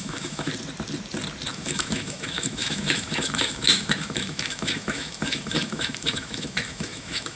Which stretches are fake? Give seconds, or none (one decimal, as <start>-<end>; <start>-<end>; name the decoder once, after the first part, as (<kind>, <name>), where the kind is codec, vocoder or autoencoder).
0.0-0.5 (autoencoder, DAC-VAE); 1.5-7.4